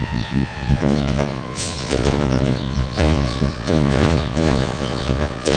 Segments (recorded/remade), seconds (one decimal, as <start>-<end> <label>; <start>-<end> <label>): 0.0-5.6 remade